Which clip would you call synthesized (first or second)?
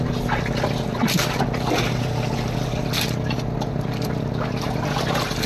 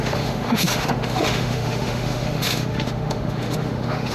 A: second